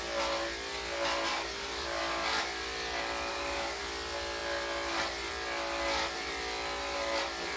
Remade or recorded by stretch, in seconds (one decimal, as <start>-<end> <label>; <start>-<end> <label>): 0.0-1.3 recorded; 1.3-2.0 remade; 2.0-3.3 recorded; 3.3-3.8 remade; 3.8-7.6 recorded